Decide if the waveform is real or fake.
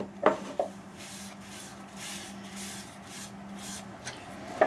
real